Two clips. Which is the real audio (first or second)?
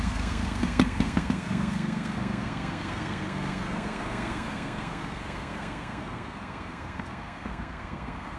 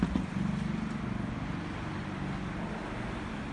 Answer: second